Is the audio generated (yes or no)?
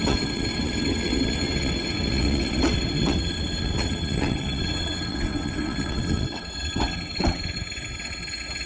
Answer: yes